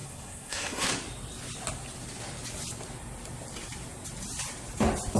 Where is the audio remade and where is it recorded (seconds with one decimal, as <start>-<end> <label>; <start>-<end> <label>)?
0.0-0.9 remade; 0.9-5.2 recorded